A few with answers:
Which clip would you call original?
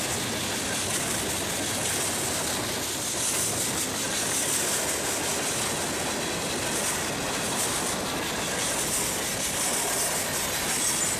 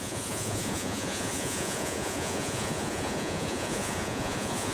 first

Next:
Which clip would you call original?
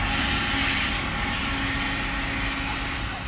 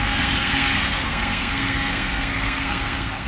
first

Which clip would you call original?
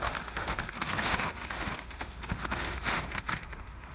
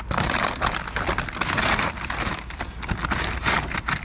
second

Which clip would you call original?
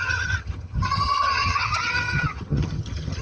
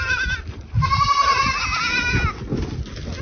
second